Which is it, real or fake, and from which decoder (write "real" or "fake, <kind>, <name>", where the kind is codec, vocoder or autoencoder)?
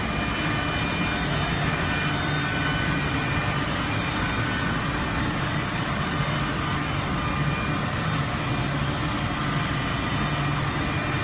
real